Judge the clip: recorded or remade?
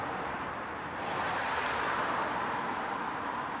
remade